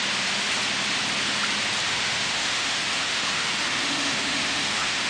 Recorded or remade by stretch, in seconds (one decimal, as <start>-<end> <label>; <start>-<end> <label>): 0.0-1.9 recorded; 1.9-5.1 remade